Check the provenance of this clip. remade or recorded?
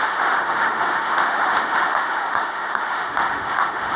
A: remade